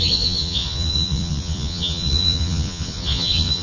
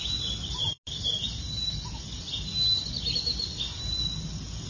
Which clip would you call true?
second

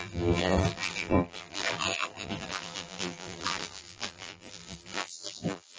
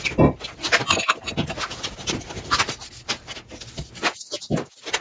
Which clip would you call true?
second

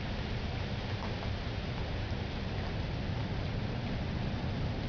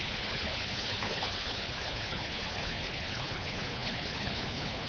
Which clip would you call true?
first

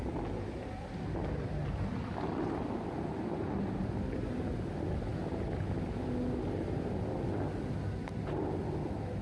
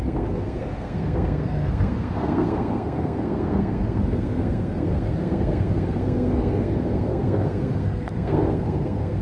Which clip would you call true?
first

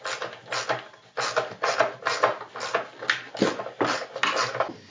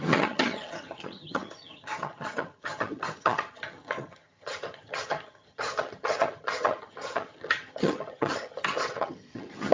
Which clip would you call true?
first